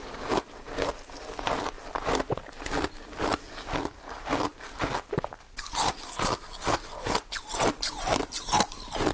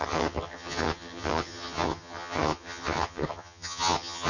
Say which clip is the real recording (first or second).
first